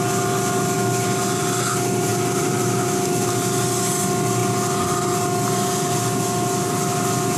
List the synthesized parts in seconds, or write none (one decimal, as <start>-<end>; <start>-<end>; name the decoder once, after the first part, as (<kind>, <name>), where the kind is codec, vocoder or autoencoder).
2.1-2.8 (vocoder, BigVGAN v2)

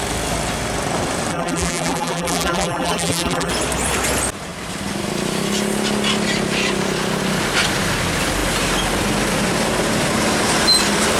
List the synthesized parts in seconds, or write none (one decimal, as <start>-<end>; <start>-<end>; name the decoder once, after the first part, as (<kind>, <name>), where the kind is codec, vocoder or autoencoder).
1.3-3.5 (vocoder, BigVGAN v2)

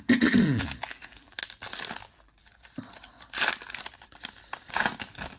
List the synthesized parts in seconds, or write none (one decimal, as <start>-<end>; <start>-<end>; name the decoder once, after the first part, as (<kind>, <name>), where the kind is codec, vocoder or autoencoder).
0.0-1.4 (vocoder, BigVGAN v2); 2.0-2.5; 5.0-5.4

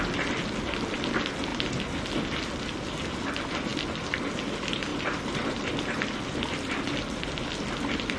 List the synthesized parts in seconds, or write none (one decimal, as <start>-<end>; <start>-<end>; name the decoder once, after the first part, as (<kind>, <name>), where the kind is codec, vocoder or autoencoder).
3.7-4.3 (vocoder, BigVGAN v2); 4.9-6.5

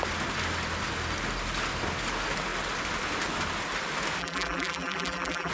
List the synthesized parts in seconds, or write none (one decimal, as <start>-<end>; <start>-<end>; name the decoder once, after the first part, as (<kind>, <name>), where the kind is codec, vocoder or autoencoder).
4.2-5.5 (vocoder, BigVGAN v2)

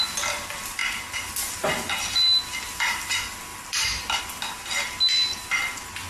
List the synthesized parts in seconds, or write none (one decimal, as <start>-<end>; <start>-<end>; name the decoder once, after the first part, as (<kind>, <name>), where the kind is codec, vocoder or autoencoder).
3.5-4.2 (vocoder, BigVGAN v2)

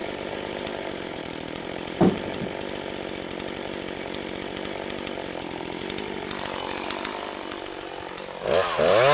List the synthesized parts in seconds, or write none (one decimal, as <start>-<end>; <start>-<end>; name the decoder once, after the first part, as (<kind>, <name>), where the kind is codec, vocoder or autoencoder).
0.0-2.1 (vocoder, BigVGAN v2)

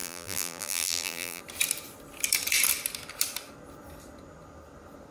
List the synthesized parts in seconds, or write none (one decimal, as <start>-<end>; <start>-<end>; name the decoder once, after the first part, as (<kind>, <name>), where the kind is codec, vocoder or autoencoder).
0.0-1.4 (vocoder, BigVGAN v2)